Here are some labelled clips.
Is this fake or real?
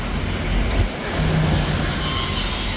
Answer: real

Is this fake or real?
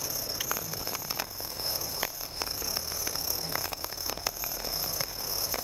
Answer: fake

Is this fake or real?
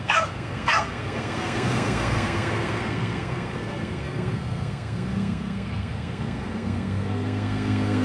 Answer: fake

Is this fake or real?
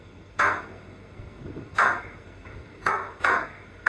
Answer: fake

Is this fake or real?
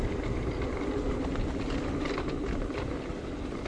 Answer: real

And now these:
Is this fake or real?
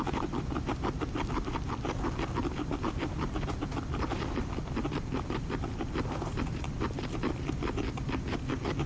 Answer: real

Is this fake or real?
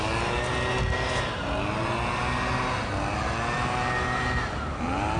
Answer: real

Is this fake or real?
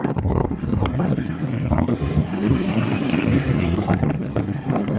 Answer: fake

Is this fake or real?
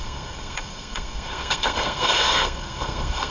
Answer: fake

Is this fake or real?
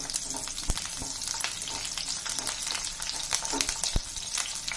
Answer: real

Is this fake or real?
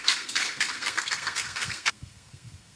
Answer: fake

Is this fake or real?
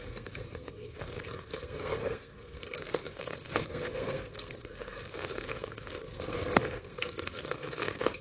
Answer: fake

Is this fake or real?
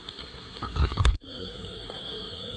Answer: fake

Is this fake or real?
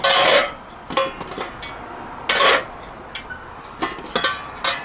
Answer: real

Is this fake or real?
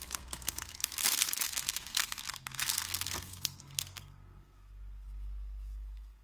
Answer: fake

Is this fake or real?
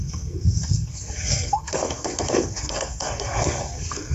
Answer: fake